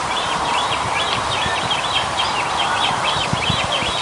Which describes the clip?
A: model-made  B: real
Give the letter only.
A